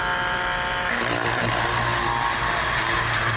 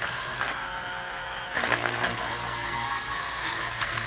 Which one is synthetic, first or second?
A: second